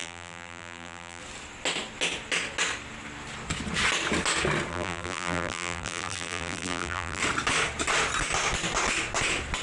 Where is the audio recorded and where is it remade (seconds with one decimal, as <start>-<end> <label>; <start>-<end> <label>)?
0.0-1.2 remade; 1.2-4.7 recorded; 4.7-7.2 remade; 7.2-9.6 recorded